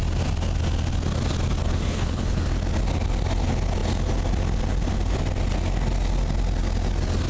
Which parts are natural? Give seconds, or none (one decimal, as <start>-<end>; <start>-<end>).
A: 0.0-1.6; 2.4-7.3